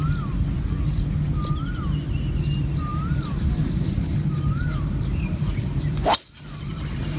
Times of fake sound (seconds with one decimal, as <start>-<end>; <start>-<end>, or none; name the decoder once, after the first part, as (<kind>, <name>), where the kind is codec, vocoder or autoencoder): 2.9-7.2 (vocoder, BigVGAN v2)